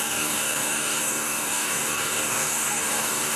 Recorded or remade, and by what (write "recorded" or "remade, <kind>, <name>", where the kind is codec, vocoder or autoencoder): remade, codec, DAC